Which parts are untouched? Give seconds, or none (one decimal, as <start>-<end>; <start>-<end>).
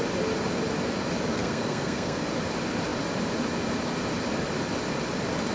0.0-1.3; 2.3-5.5